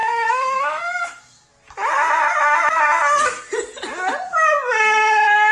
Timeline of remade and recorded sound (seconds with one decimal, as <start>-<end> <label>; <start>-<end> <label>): 0.0-0.8 remade; 0.8-5.5 recorded